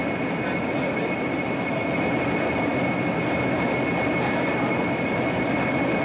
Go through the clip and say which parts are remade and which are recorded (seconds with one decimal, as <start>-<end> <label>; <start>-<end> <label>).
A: 0.0-6.0 recorded